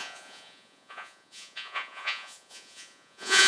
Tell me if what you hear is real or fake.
fake